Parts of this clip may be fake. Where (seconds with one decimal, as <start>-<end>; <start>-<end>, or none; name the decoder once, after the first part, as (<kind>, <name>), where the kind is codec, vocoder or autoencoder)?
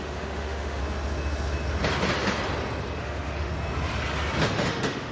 0.0-0.8 (autoencoder, DAC-VAE); 3.0-3.5; 4.5-5.1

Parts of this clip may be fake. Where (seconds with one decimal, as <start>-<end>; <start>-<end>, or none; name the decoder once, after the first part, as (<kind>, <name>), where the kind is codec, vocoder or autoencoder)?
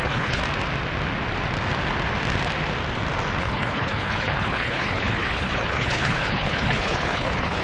0.0-0.4 (codec, HILCodec); 3.4-7.6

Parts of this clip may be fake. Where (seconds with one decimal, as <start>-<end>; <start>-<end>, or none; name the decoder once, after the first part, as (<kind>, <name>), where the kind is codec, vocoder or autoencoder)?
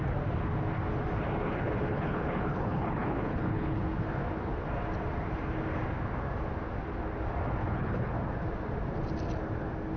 1.9-3.8 (codec, HILCodec); 7.6-8.1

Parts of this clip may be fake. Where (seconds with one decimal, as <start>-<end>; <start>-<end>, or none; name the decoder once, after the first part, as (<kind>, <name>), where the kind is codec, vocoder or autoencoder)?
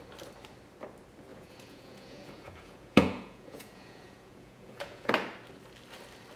1.3-5.1 (vocoder, Vocos)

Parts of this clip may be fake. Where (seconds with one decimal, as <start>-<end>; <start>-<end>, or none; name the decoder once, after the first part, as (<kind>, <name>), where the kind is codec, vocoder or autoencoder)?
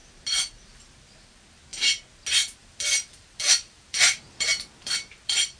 2.6-5.6 (vocoder, BigVGAN v2)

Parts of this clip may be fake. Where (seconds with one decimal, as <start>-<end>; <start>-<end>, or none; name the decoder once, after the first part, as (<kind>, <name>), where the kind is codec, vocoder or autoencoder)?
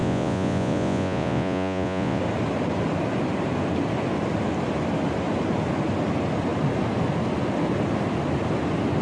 0.0-2.2 (vocoder, Vocos)